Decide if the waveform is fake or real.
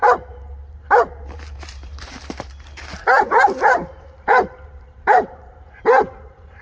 fake